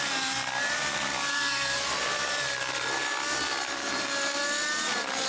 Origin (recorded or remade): recorded